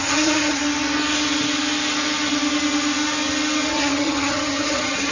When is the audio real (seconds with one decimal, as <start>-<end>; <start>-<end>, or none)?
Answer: 0.6-3.7